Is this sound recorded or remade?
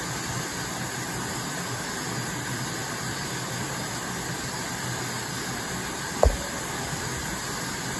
recorded